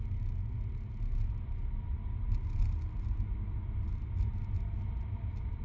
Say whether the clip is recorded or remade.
recorded